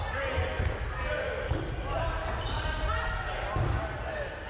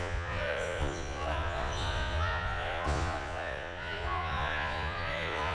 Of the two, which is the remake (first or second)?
second